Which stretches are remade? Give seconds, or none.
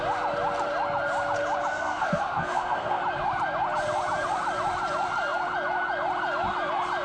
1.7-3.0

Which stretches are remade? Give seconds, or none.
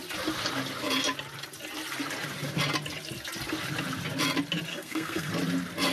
4.7-5.3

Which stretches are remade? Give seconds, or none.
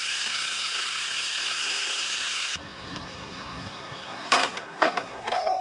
0.0-5.6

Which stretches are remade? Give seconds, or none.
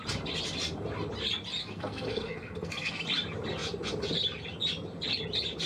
1.6-3.0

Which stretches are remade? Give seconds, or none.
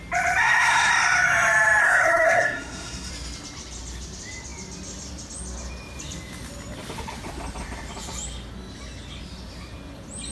0.4-0.9; 1.8-3.1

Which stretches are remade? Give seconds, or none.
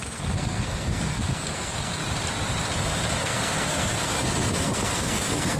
0.0-2.0; 3.2-5.6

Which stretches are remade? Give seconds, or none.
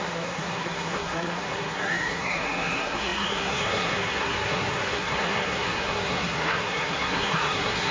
0.0-7.9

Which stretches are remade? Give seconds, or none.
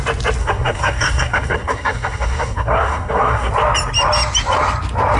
0.4-3.5